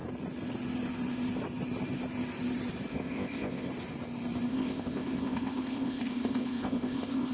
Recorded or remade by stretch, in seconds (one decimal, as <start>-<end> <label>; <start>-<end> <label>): 0.0-2.9 recorded; 2.9-3.7 remade; 3.7-4.5 recorded; 4.5-7.3 remade